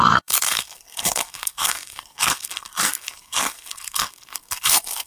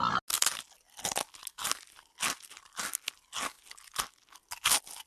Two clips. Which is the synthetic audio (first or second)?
first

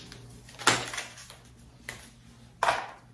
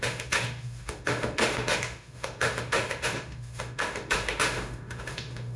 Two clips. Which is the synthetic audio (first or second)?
second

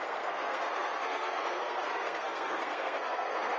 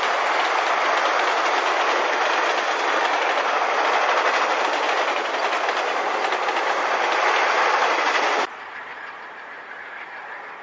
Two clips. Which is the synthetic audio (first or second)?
first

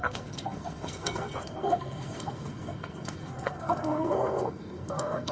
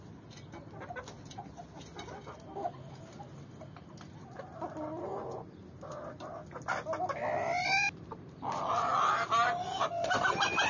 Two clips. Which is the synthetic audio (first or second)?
first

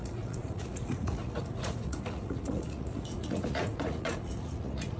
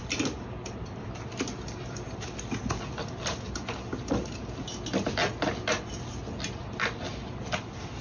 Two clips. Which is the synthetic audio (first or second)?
first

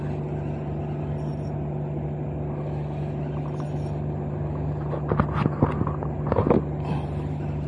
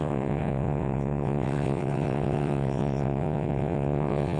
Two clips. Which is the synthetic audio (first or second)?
second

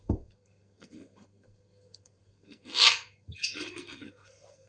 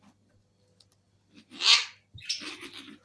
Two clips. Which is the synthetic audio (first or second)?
first